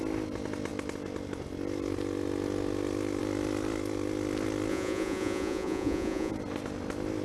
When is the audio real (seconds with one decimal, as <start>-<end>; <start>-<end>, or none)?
0.0-4.7; 6.3-7.2